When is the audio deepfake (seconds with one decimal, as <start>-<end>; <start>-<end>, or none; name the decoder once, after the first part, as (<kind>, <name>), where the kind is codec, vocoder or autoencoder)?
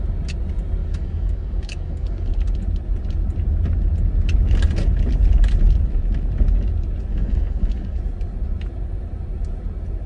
0.8-2.3 (codec, DAC); 7.1-8.0